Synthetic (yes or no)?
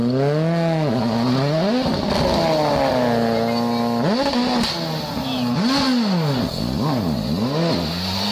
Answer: no